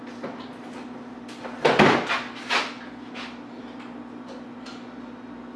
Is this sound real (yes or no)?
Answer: yes